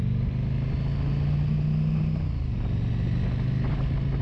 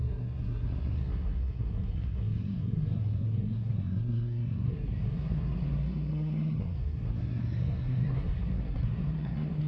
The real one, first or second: first